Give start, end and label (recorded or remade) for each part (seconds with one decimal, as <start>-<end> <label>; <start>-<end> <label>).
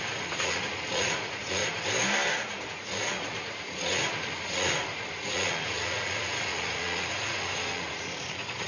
0.0-1.6 remade; 1.6-2.3 recorded; 2.3-8.7 remade